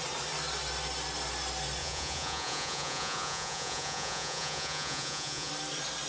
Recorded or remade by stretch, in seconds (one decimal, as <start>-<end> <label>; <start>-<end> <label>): 0.0-1.8 recorded; 1.8-5.5 remade; 5.5-6.1 recorded